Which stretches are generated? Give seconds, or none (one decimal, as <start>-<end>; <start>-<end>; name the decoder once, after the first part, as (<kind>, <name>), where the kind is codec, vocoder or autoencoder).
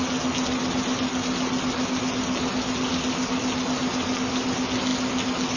none